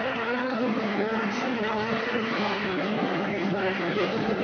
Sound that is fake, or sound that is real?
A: fake